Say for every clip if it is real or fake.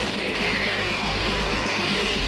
fake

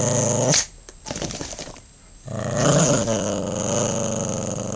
real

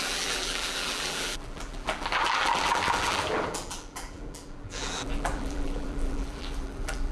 fake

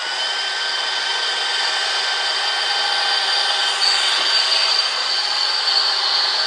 real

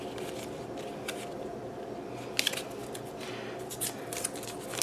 real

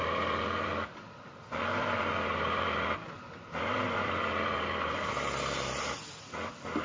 fake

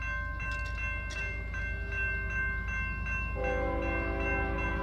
real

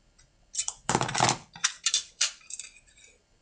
fake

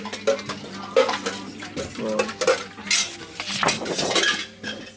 real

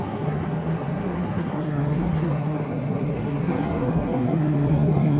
fake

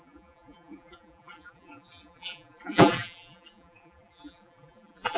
fake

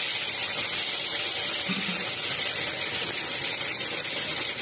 real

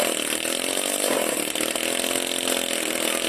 real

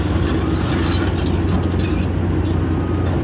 real